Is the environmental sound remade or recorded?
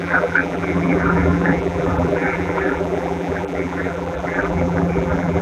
remade